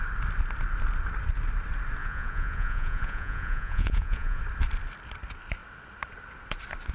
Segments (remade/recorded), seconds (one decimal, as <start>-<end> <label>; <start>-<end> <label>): 0.0-2.0 recorded; 2.0-4.4 remade; 4.4-6.9 recorded